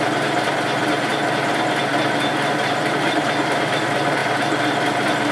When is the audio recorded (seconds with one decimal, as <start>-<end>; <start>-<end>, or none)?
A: 1.1-2.5; 4.2-5.3